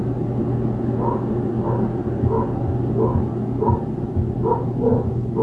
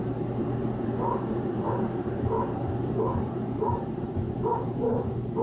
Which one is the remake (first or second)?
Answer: second